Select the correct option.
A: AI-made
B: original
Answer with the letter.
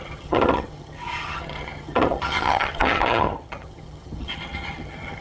A